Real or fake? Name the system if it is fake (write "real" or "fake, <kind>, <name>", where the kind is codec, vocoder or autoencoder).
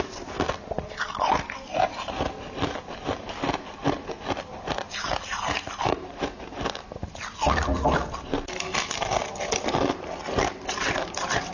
real